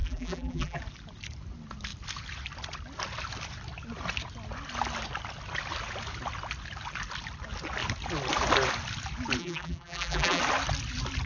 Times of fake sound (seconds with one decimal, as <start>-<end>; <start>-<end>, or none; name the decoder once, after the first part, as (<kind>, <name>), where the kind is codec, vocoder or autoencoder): 0.0-0.8 (vocoder, BigVGAN v2); 9.4-10.4